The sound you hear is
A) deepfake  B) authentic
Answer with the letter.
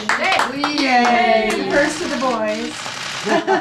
B